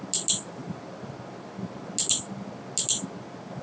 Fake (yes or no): no